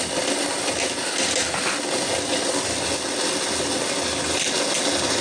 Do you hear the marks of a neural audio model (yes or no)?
no